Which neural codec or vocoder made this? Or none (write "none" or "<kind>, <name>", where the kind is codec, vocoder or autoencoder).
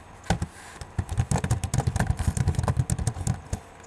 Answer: none